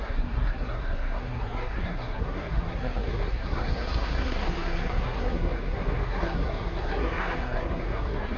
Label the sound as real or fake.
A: fake